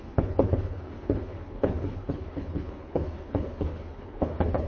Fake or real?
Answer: fake